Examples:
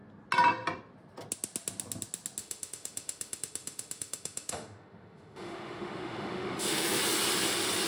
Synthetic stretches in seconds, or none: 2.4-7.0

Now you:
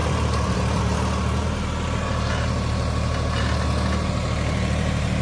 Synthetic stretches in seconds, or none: 0.0-0.8

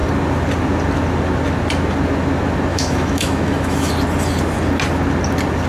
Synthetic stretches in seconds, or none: 2.7-3.9

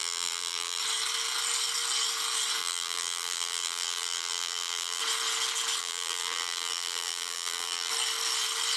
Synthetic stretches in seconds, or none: 0.0-0.8; 2.6-5.0; 5.8-7.9